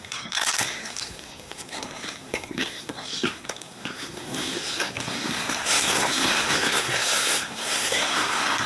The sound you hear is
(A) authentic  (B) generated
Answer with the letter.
B